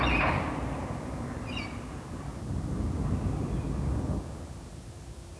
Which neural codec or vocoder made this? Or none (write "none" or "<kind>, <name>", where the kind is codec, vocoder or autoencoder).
none